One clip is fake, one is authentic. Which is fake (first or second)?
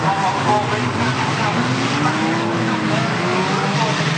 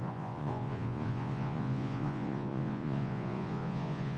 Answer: second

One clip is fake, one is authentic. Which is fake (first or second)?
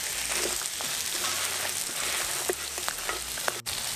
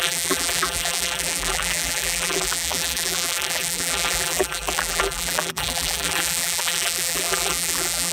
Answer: second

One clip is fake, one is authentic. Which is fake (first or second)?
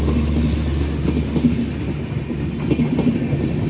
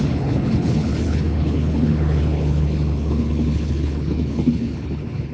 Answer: second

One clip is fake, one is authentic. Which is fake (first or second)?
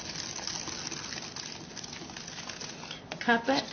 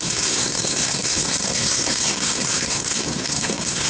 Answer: second